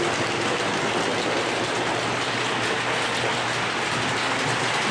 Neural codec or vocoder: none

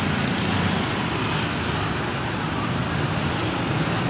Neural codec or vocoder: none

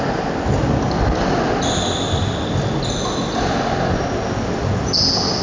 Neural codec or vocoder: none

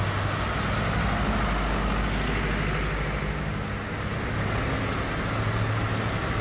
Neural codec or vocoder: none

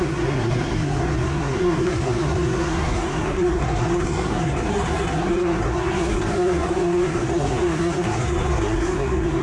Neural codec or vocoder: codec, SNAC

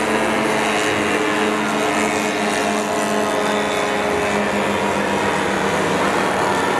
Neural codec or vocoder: none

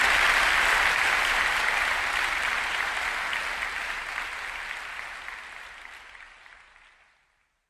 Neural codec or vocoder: none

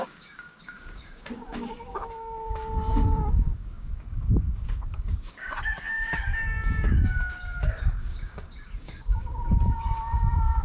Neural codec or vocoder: codec, DAC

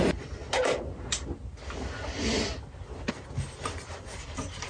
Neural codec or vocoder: none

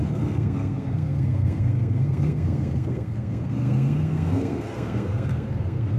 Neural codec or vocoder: codec, SNAC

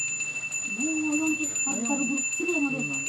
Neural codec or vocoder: none